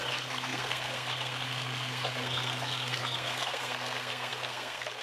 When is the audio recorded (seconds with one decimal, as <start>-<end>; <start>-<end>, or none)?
none

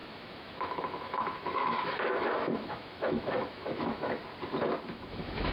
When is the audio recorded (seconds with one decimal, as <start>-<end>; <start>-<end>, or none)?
4.2-4.9